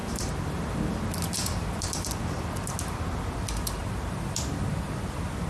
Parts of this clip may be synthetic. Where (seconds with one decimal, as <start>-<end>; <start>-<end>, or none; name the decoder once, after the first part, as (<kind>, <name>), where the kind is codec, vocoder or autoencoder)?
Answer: 0.0-2.1 (vocoder, BigVGAN v2); 3.8-5.5